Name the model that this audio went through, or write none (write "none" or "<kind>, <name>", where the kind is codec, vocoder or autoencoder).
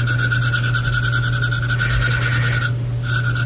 none